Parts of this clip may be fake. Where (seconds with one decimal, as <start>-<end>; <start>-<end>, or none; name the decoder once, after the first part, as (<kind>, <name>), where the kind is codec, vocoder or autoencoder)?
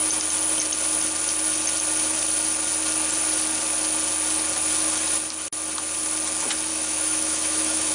6.7-7.9 (autoencoder, DAC-VAE)